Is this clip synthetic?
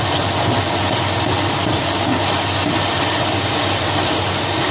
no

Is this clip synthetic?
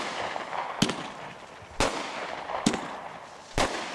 no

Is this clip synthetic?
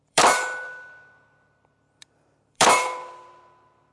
yes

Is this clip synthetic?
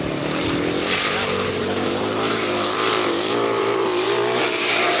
yes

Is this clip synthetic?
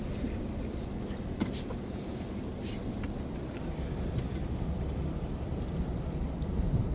yes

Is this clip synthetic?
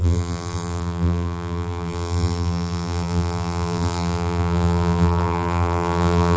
yes